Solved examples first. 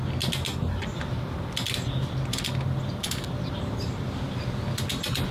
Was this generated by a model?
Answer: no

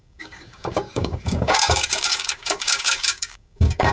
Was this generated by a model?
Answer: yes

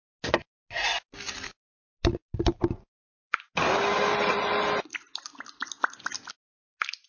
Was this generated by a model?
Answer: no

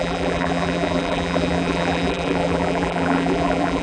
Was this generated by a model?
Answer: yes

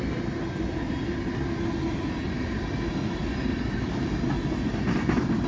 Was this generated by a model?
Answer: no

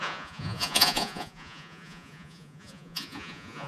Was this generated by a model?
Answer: yes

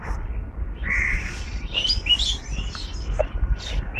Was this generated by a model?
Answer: no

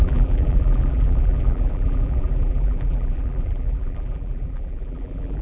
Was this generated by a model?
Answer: yes